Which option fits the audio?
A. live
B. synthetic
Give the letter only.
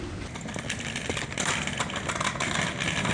A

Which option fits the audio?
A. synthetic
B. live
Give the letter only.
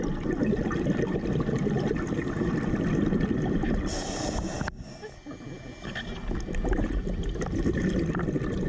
B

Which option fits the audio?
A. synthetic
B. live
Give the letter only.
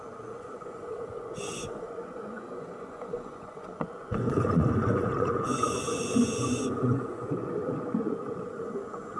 A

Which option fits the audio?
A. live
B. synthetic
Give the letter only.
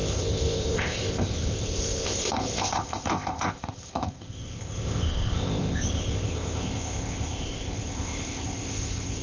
B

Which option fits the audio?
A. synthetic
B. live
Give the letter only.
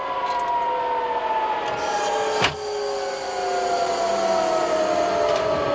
B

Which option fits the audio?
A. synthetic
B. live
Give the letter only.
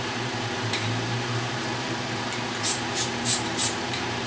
A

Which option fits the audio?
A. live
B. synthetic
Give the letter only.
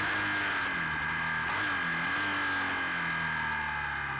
A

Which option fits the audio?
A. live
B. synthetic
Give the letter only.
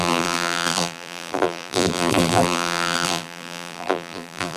B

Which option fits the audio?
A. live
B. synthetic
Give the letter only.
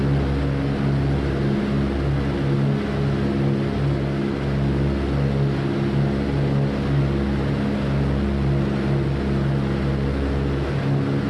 A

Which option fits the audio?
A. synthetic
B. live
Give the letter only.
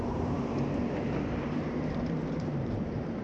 A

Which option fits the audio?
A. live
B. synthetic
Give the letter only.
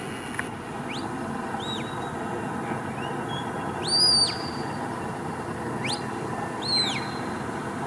A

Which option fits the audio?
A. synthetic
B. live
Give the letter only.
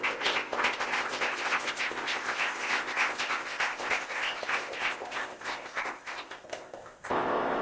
A